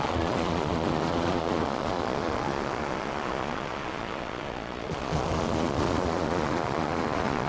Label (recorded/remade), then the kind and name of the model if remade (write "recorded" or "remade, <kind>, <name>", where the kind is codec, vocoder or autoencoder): remade, vocoder, Vocos